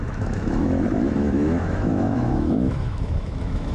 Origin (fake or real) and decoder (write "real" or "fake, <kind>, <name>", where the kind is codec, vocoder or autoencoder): fake, autoencoder, DAC-VAE